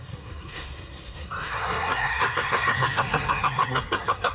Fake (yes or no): yes